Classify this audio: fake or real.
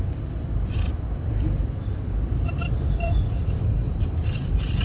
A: fake